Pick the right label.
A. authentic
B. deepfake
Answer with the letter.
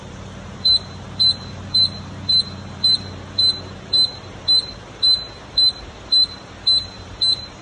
B